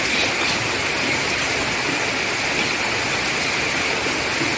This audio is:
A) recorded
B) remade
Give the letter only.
A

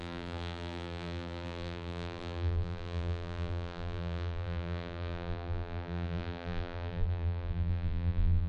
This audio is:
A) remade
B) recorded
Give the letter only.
A